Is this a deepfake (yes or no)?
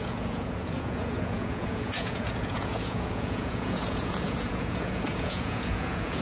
yes